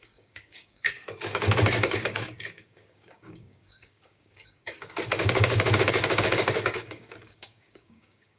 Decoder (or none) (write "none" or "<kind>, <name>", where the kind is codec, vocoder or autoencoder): codec, DAC